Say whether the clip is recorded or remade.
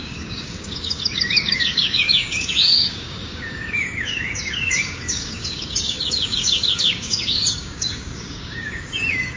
remade